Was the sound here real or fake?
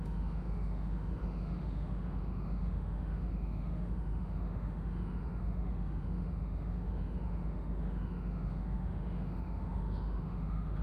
fake